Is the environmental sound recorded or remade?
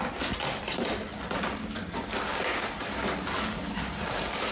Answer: recorded